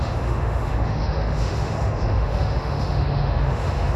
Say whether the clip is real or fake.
fake